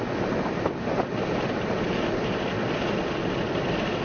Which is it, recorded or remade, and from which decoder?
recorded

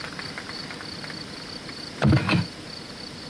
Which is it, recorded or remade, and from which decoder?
recorded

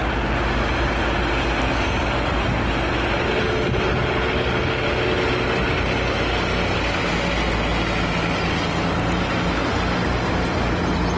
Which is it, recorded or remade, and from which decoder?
recorded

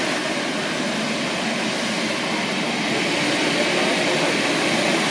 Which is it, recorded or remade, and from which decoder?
recorded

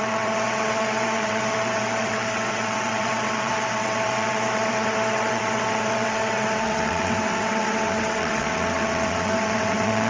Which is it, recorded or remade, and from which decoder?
remade, vocoder, WaveNeXt